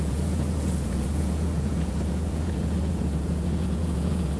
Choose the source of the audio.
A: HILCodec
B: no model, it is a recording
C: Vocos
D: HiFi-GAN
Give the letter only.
C